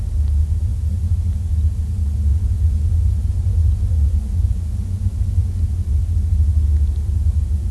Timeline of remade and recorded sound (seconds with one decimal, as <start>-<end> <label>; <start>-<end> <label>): 0.0-2.3 recorded; 2.3-5.6 remade; 5.6-7.7 recorded